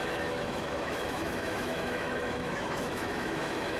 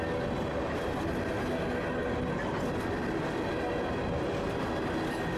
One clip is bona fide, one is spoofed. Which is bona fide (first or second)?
second